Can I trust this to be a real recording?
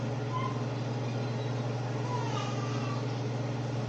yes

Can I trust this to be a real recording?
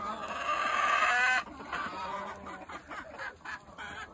yes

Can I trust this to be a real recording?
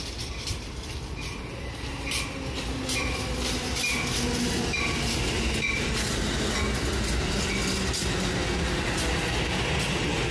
yes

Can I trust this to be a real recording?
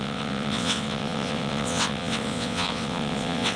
no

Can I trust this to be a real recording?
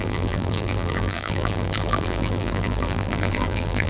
no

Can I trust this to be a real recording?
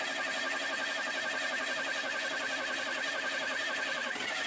yes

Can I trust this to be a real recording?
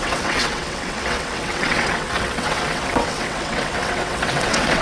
no